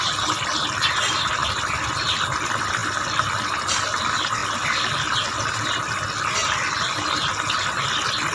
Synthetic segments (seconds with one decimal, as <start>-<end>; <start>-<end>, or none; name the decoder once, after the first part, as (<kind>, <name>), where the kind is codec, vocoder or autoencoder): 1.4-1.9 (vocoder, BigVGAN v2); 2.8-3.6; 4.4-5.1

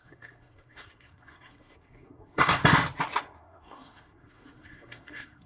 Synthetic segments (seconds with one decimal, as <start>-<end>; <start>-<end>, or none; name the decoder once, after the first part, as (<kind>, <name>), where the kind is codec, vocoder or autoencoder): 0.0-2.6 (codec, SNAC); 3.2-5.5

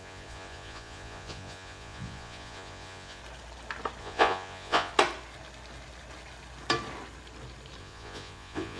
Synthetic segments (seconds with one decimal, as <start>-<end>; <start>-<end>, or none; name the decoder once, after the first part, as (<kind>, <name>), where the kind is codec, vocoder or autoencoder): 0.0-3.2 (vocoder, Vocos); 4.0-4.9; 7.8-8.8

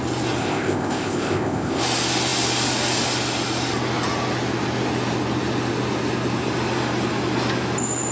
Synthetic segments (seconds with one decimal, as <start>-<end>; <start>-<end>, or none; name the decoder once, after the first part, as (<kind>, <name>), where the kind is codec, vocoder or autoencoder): 0.4-1.8 (codec, ZipCodec)

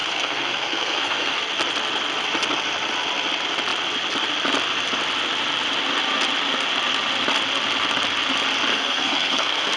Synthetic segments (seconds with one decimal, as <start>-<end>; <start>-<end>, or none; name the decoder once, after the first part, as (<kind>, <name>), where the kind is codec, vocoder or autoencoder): 0.0-1.4 (codec, SNAC); 8.7-9.8

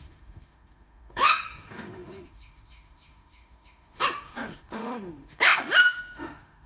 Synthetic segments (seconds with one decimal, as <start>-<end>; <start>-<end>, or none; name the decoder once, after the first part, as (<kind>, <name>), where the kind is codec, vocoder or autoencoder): 0.0-6.7 (autoencoder, DAC-VAE)

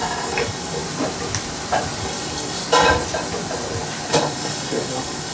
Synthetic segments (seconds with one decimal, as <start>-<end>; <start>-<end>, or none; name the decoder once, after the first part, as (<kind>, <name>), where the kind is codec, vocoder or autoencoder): 0.0-0.8 (codec, DAC); 2.0-2.6; 4.1-5.3